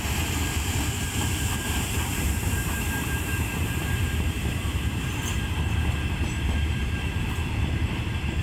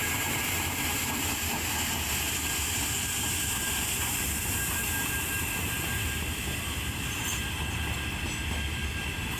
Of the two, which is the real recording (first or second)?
second